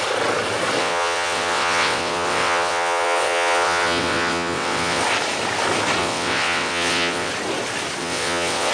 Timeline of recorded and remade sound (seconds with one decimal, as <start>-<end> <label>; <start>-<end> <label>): 0.0-0.8 recorded; 0.8-5.0 remade; 5.0-6.0 recorded; 6.0-7.3 remade; 7.3-8.0 recorded; 8.0-8.7 remade